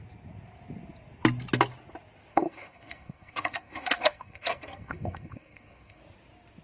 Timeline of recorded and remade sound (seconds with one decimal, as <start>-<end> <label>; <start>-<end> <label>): 0.0-2.3 recorded; 2.3-6.0 remade; 6.0-6.6 recorded